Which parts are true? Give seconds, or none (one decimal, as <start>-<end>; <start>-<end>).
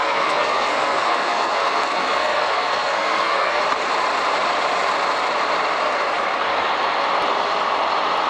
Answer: 3.6-8.3